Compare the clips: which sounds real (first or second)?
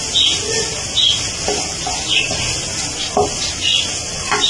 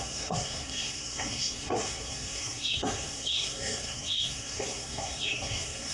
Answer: first